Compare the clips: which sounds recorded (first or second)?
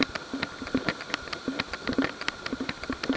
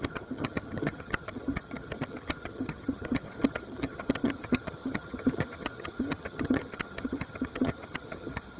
first